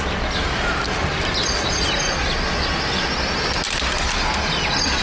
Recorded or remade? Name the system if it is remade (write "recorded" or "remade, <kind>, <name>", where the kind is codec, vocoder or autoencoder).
recorded